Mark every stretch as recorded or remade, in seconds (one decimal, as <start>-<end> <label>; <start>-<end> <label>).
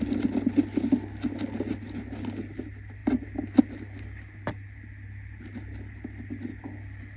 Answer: 0.0-7.2 recorded